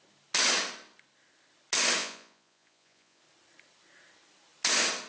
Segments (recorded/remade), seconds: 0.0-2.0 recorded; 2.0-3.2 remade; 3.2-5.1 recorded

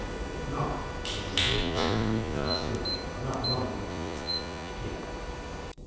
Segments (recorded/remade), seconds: 0.0-1.4 recorded; 1.4-2.7 remade; 2.7-3.9 recorded; 3.9-4.7 remade; 4.7-5.9 recorded

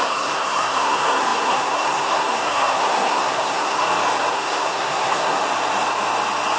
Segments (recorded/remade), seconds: 0.0-3.8 remade; 3.8-4.3 recorded; 4.3-5.4 remade; 5.4-6.6 recorded

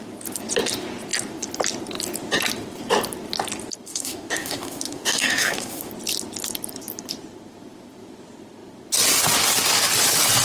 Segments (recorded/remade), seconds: 0.0-3.9 recorded; 3.9-5.9 remade; 5.9-10.4 recorded

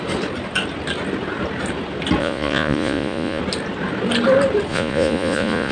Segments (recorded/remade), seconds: 0.0-2.2 recorded; 2.2-3.4 remade; 3.4-4.7 recorded; 4.7-5.7 remade

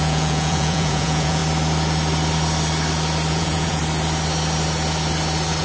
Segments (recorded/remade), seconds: 0.0-1.4 remade; 1.4-3.3 recorded; 3.3-3.8 remade; 3.8-5.6 recorded

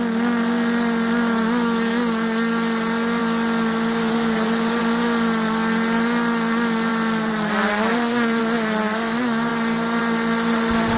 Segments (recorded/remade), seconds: 0.0-7.9 recorded; 7.9-8.4 remade; 8.4-9.5 recorded; 9.5-10.0 remade; 10.0-11.0 recorded

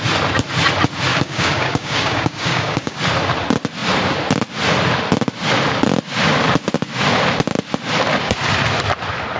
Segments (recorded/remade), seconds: 0.0-1.1 recorded; 1.1-3.0 remade; 3.0-9.4 recorded